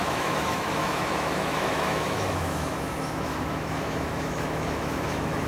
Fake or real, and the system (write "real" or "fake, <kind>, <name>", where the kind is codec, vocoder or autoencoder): fake, autoencoder, DAC-VAE